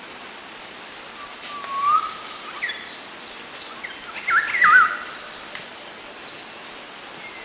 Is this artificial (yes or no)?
no